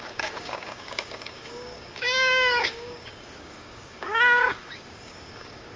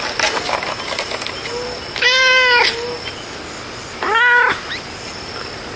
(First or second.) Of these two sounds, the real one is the second